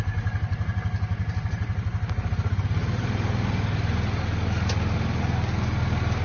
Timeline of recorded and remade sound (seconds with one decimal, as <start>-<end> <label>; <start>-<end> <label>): 0.0-6.2 recorded